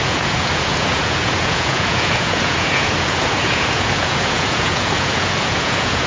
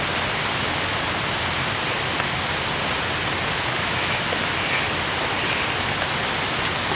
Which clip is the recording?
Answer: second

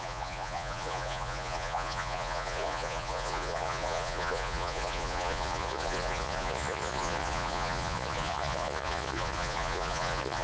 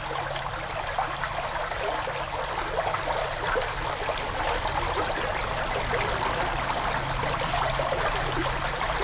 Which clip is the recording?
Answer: second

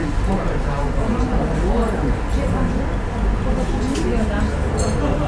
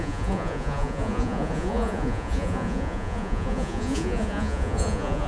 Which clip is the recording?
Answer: first